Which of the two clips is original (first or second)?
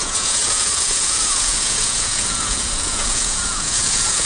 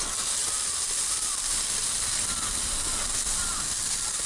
second